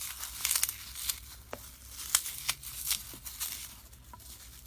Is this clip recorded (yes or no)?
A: yes